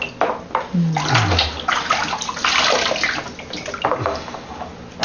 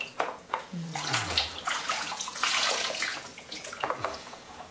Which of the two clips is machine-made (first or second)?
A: second